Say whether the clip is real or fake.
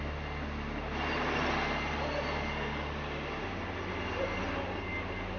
real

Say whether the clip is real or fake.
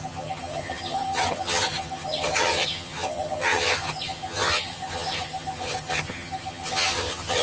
fake